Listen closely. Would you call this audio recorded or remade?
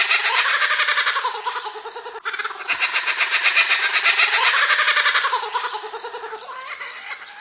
recorded